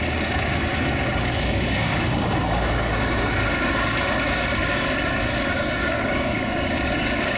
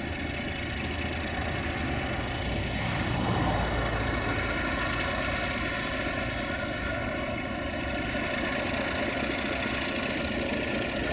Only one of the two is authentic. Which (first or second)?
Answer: second